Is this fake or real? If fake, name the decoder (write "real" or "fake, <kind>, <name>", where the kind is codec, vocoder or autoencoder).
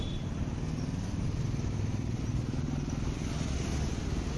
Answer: real